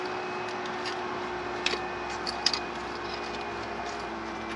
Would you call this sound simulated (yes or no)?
no